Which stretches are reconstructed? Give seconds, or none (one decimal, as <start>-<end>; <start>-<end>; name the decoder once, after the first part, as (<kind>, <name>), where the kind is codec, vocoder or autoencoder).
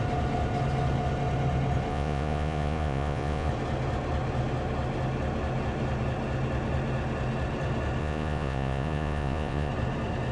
1.9-3.5 (vocoder, Vocos); 8.0-9.7